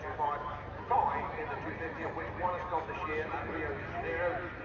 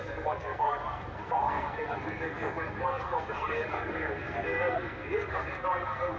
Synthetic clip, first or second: second